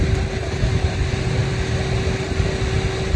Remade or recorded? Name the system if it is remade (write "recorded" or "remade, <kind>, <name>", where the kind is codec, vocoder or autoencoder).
recorded